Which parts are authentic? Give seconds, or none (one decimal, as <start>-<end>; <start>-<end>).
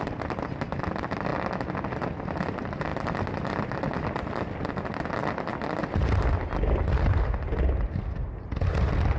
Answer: 0.0-9.2